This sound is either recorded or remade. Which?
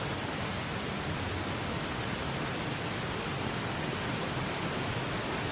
recorded